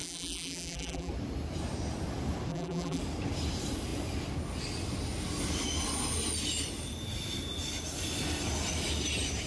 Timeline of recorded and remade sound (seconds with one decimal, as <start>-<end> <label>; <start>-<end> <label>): 0.0-1.1 remade; 1.1-2.5 recorded; 2.5-3.0 remade; 3.0-9.5 recorded